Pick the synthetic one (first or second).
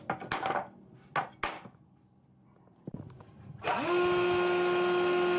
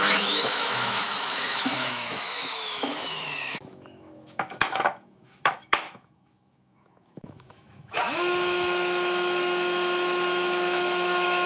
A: second